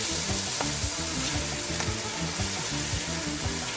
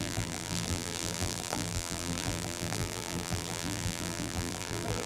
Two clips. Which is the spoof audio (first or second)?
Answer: second